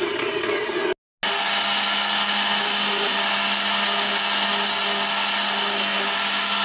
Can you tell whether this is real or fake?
real